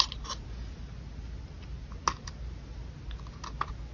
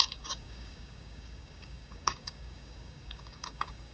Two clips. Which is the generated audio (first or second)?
second